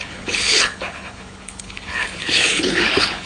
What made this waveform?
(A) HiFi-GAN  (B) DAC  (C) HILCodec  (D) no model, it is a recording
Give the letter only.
C